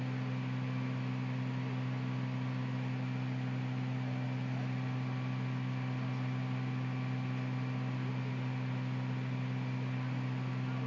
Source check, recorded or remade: recorded